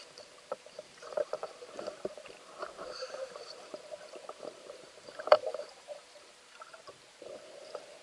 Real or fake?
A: fake